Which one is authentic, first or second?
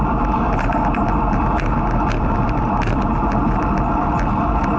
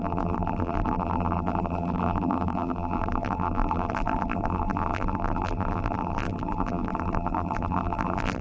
first